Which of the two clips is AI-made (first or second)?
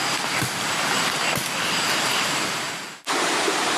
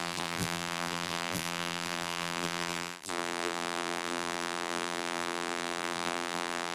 second